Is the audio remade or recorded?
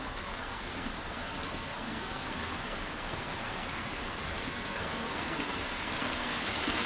remade